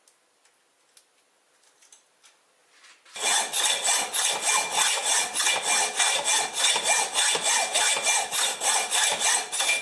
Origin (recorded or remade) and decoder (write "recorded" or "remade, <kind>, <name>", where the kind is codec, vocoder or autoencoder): recorded